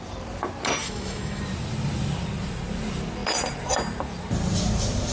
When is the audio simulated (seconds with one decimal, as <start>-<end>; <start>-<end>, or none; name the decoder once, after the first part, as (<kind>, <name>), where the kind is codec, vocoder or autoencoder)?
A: 0.8-1.4 (autoencoder, DAC-VAE)